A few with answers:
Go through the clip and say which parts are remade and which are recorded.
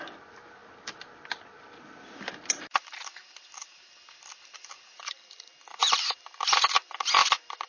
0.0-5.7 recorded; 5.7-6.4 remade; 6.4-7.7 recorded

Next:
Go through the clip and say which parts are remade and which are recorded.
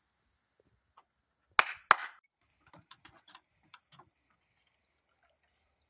0.0-2.0 recorded; 2.0-4.1 remade; 4.1-5.9 recorded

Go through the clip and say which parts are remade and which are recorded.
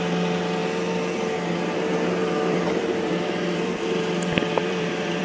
0.0-2.2 recorded; 2.2-5.2 remade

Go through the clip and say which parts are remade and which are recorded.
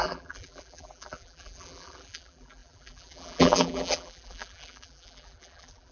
0.0-5.9 remade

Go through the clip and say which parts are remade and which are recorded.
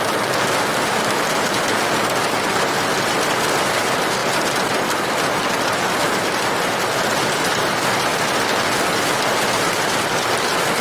0.0-10.8 recorded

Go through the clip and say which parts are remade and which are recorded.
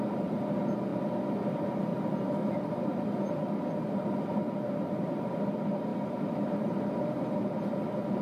0.0-8.2 recorded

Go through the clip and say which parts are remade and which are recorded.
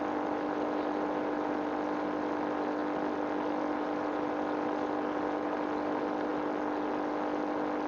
0.0-7.9 recorded